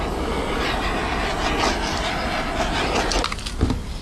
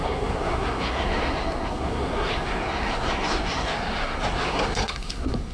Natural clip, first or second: first